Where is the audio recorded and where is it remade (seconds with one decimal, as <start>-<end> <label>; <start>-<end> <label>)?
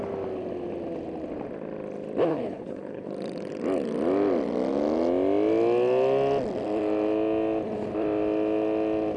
0.0-2.3 recorded; 2.3-3.1 remade; 3.1-9.2 recorded